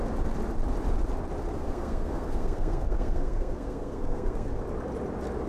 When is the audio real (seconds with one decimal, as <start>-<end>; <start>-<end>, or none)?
0.0-1.6; 4.6-5.5